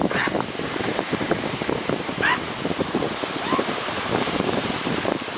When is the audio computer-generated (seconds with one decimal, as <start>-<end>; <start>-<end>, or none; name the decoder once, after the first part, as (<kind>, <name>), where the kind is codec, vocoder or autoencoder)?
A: 0.0-2.4 (vocoder, BigVGAN v2); 3.7-5.4